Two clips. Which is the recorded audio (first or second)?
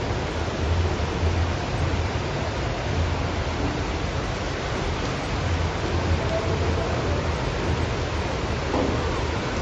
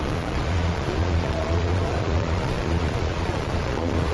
first